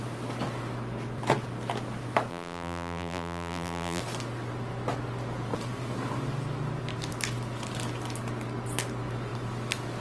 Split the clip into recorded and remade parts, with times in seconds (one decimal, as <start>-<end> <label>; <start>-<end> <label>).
0.0-2.3 recorded; 2.3-4.0 remade; 4.0-10.0 recorded